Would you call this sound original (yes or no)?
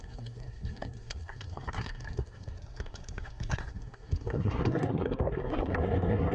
no